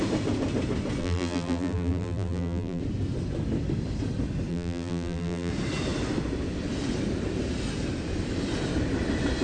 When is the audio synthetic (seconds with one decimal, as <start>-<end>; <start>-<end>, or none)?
1.0-2.8; 4.5-5.5